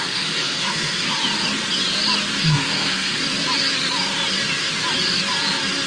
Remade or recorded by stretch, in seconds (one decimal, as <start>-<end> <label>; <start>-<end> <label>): 0.0-1.2 remade; 1.2-2.4 recorded; 2.4-3.2 remade; 3.2-5.9 recorded